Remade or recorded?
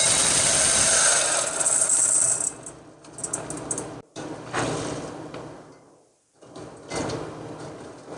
recorded